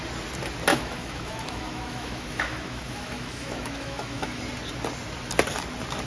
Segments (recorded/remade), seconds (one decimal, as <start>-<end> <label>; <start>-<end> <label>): 0.0-0.7 recorded; 0.7-4.4 remade; 4.4-6.1 recorded

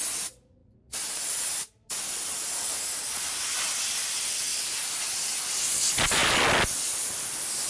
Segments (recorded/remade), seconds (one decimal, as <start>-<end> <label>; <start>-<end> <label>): 0.0-7.7 recorded

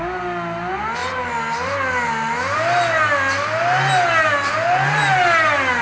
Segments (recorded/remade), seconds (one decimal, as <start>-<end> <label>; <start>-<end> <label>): 0.0-5.8 recorded

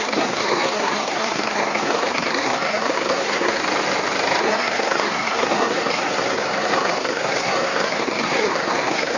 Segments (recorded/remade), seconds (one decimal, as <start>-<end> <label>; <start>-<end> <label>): 0.0-3.6 remade; 3.6-4.4 recorded; 4.4-9.2 remade

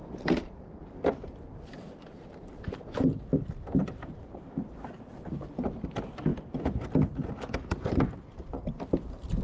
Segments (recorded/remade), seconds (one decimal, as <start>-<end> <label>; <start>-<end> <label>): 0.0-3.3 remade; 3.3-3.8 recorded; 3.8-6.3 remade; 6.3-7.9 recorded; 7.9-9.4 remade

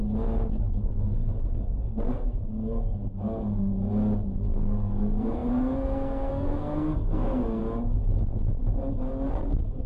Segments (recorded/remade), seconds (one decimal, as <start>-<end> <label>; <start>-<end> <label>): 0.0-0.7 recorded; 0.7-3.7 remade; 3.7-4.4 recorded; 4.4-7.6 remade; 7.6-9.3 recorded; 9.3-9.9 remade

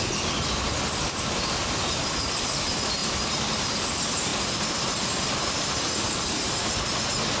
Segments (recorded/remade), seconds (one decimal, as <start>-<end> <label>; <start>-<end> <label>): 0.0-7.4 recorded

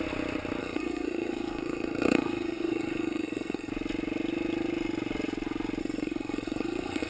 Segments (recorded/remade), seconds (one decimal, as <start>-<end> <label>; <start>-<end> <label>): 0.0-0.6 recorded; 0.6-3.7 remade; 3.7-5.8 recorded; 5.8-7.1 remade